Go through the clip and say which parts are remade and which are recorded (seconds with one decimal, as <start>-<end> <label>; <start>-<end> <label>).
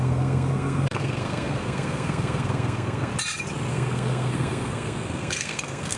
0.0-3.1 remade; 3.1-3.7 recorded; 3.7-6.0 remade